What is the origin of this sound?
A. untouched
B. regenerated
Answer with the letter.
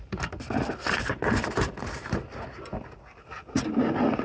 A